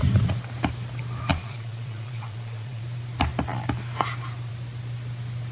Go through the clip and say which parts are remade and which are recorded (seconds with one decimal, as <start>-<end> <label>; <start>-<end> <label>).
0.0-1.3 recorded; 1.3-2.8 remade; 2.8-5.5 recorded